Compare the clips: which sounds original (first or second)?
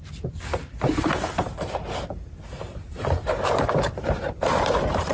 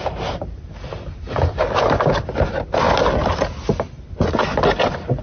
second